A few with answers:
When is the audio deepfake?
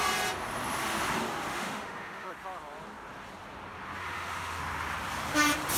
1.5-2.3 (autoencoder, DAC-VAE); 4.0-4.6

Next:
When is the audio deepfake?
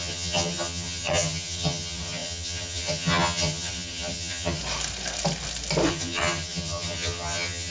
0.0-4.6 (vocoder, HiFi-GAN); 5.9-7.7